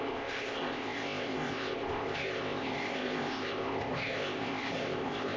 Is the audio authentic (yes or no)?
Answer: no